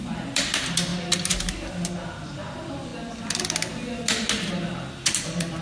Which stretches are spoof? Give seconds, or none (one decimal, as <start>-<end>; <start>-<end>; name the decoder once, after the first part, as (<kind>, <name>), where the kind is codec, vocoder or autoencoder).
0.0-0.9 (vocoder, BigVGAN v2); 1.5-2.9; 4.9-5.6